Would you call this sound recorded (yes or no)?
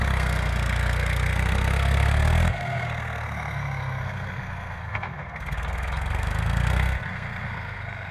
no